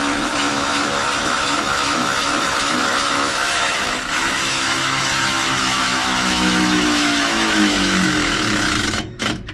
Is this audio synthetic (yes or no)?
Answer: yes